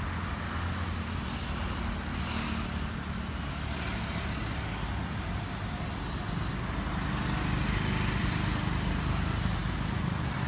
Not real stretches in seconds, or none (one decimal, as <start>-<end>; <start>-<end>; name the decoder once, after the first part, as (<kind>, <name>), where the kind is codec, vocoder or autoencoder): none